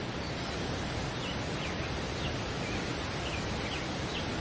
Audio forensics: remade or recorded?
recorded